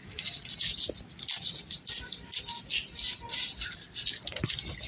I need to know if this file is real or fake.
real